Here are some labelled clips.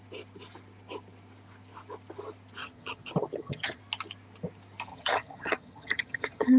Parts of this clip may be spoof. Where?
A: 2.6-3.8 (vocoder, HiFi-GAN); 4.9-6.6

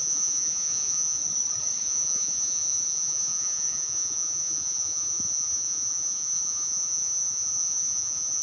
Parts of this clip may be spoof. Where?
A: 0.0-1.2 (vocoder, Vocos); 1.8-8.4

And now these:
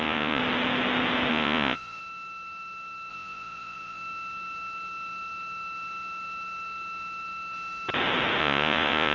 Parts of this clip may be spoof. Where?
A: 0.0-0.4 (vocoder, Vocos); 1.3-2.0; 3.1-4.0; 8.4-9.1